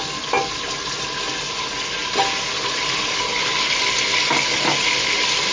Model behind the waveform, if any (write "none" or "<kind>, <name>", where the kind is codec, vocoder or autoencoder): none